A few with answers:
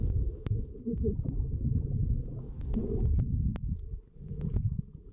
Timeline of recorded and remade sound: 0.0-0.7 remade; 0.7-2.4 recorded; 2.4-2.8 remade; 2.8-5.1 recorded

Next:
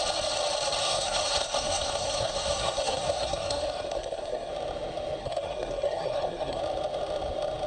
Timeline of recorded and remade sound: 0.0-0.8 recorded; 0.8-4.5 remade; 4.5-5.2 recorded; 5.2-6.6 remade; 6.6-7.7 recorded

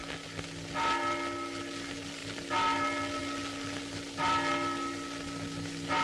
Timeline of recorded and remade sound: 0.0-6.0 recorded

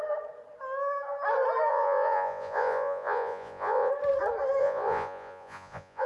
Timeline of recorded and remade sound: 0.0-1.7 recorded; 1.7-3.9 remade; 3.9-4.6 recorded; 4.6-6.1 remade

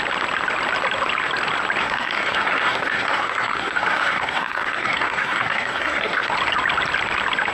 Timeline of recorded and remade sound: 0.0-1.8 recorded; 1.8-6.3 remade; 6.3-7.5 recorded